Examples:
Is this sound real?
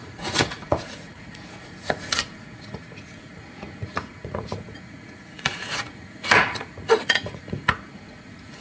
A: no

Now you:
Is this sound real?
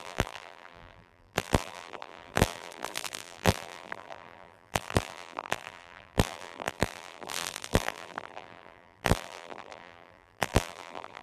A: no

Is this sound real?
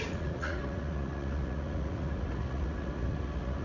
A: no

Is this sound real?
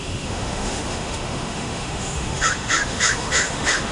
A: no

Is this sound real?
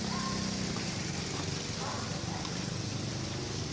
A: yes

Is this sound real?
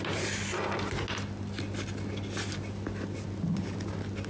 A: yes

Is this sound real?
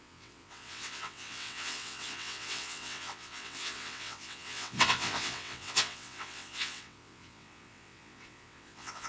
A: no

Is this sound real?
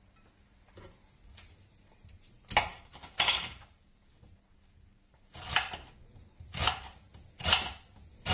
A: yes